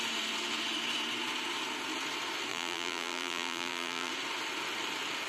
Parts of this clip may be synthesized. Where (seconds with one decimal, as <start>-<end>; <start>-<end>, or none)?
2.5-4.1